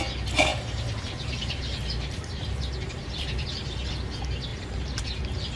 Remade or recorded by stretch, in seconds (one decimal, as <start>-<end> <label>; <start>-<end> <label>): 0.0-0.5 recorded; 0.5-3.9 remade; 3.9-4.5 recorded; 4.5-5.0 remade; 5.0-5.6 recorded